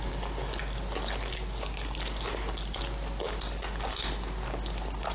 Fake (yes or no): no